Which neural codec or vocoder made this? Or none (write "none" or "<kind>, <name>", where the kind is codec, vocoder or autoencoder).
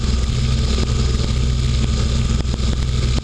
none